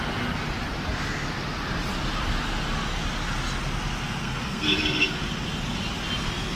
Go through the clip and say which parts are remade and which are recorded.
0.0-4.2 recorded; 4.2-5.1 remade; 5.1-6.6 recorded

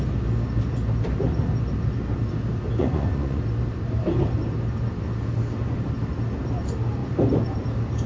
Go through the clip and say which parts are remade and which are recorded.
0.0-2.8 recorded; 2.8-3.4 remade; 3.4-8.1 recorded